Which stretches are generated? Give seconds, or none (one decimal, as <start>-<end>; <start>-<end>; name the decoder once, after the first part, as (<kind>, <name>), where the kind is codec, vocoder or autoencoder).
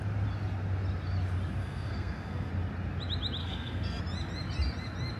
1.6-2.5 (codec, SNAC); 3.4-4.0